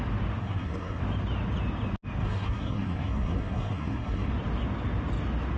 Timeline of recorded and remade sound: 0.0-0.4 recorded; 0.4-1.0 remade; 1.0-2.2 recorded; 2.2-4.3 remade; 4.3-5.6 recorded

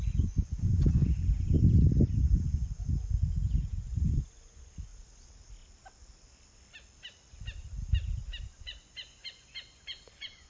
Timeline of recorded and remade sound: 0.0-1.6 remade; 1.6-2.3 recorded; 2.3-4.9 remade; 4.9-8.4 recorded; 8.4-10.5 remade

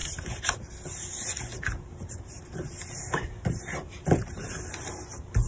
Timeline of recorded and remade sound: 0.0-0.6 remade; 0.6-1.5 recorded; 1.5-4.6 remade; 4.6-5.5 recorded